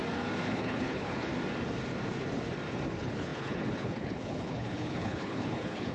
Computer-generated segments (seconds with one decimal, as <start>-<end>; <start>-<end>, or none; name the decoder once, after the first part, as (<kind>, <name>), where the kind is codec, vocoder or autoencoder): 0.5-1.3 (codec, HILCodec); 2.9-5.9